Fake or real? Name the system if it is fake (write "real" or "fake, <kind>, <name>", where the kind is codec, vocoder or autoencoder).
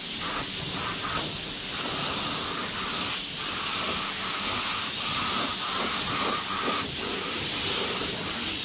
real